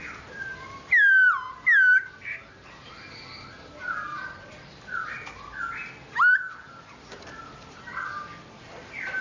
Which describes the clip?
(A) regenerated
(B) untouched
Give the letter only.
B